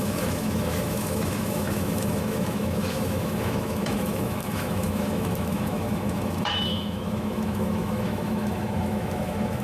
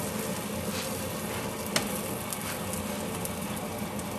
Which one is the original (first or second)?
second